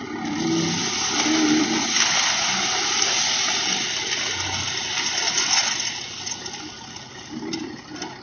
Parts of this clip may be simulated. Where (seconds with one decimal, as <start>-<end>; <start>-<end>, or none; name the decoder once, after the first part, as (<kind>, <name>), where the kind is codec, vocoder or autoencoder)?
none